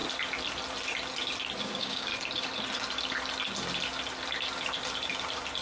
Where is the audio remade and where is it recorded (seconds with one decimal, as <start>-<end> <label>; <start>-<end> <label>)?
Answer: 0.0-1.6 recorded; 1.6-2.1 remade; 2.1-5.6 recorded